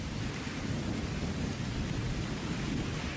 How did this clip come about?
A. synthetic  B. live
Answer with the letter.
B